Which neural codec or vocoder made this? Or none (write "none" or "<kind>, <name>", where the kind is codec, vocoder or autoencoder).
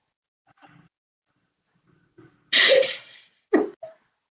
none